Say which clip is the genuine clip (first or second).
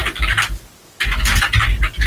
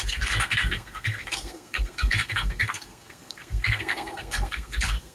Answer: first